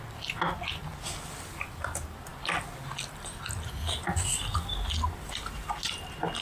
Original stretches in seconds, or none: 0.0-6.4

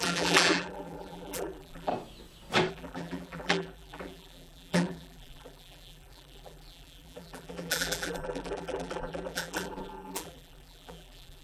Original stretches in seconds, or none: 1.9-2.7

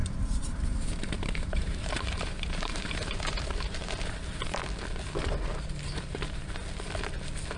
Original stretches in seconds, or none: 4.6-5.5; 6.6-7.6

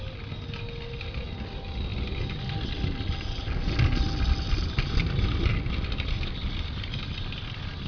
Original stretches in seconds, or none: 0.0-7.9

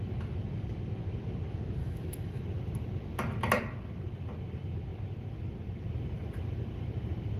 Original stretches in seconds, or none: 0.0-1.8; 2.4-7.4